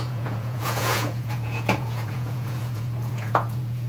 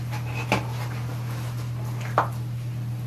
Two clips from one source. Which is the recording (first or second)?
second